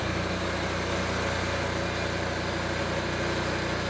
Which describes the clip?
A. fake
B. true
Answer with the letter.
B